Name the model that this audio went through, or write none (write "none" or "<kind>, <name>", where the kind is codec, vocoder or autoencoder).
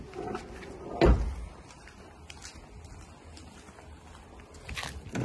none